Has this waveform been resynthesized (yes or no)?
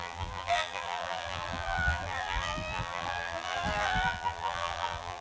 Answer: yes